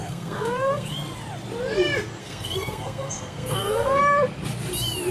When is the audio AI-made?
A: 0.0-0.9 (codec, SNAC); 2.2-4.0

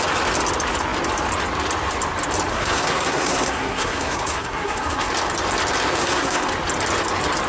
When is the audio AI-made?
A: 2.5-5.1 (codec, SNAC); 6.0-6.5